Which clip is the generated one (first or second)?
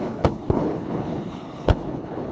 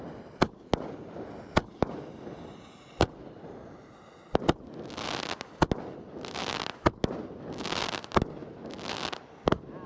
first